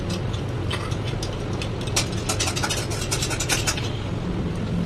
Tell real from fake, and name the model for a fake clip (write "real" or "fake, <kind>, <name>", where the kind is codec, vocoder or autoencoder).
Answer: real